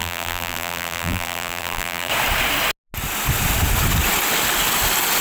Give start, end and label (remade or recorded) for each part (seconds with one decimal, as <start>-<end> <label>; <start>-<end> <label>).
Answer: 0.0-2.1 remade; 2.1-5.2 recorded